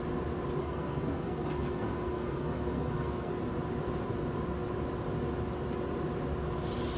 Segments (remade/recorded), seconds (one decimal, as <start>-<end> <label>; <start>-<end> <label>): 0.0-0.6 recorded; 0.6-3.3 remade; 3.3-7.0 recorded